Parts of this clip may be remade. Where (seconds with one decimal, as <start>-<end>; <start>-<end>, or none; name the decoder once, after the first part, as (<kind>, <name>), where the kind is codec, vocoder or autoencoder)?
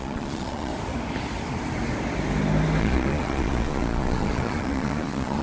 0.0-0.7 (vocoder, Vocos); 2.8-5.4